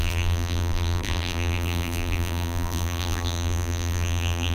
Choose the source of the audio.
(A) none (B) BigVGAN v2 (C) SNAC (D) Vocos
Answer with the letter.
B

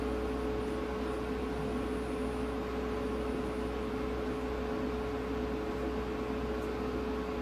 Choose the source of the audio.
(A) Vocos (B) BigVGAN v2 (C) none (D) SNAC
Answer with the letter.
C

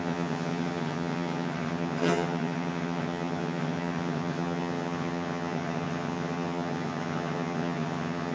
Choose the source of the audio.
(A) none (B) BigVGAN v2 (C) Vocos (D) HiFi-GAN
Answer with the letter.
D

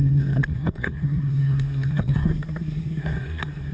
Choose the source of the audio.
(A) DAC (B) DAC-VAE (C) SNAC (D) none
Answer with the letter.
C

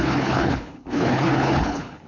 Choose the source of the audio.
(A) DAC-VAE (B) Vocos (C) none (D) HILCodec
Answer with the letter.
D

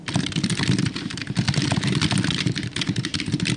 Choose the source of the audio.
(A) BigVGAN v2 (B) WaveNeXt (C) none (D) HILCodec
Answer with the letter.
A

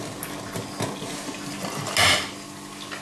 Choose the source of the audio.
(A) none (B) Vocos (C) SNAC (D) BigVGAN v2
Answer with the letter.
A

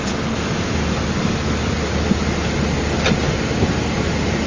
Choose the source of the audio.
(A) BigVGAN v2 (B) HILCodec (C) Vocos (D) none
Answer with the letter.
D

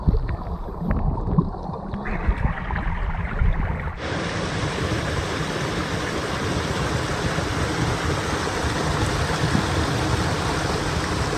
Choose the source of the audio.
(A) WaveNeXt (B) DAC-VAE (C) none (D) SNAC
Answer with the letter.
C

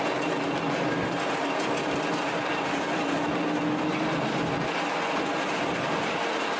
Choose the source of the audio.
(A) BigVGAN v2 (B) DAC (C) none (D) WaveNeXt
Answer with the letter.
C